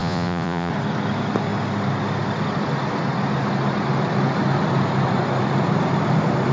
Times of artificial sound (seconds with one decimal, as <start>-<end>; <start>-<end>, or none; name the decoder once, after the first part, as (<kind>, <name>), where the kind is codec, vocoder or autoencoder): 0.0-0.7 (vocoder, Vocos)

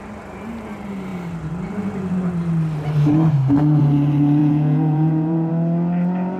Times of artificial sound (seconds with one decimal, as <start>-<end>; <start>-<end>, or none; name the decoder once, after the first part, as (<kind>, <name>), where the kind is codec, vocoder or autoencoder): 4.4-5.5 (vocoder, Vocos)

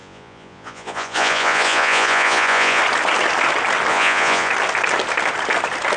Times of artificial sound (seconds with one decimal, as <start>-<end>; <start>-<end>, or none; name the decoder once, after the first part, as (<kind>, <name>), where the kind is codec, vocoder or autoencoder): 0.0-2.8 (vocoder, Vocos); 3.9-4.5

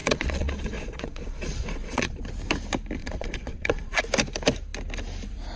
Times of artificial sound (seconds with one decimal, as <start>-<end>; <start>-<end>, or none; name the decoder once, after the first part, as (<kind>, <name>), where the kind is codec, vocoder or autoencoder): 0.0-2.2 (vocoder, Vocos); 3.0-4.0

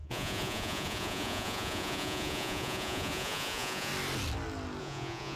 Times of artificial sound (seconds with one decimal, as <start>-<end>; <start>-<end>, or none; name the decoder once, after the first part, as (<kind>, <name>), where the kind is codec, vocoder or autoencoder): 0.0-3.9 (vocoder, Vocos); 4.8-5.4

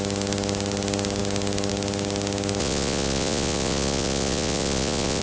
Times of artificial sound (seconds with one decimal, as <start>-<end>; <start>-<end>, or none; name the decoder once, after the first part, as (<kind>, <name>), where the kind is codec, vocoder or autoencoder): 2.6-5.2 (vocoder, Vocos)

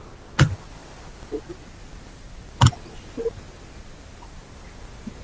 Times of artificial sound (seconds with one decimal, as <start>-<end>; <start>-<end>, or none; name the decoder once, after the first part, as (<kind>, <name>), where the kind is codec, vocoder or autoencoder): none